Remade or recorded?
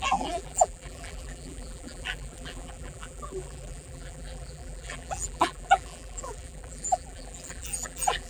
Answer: remade